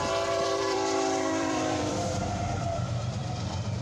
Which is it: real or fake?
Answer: fake